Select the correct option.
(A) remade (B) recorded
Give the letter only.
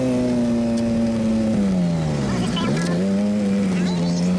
B